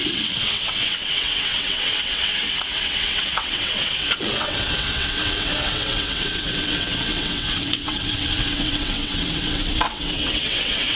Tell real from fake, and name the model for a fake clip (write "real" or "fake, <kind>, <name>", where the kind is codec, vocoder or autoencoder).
fake, vocoder, WaveNeXt